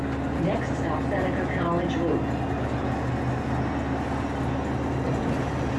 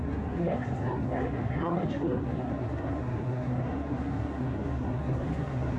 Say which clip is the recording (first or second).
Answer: first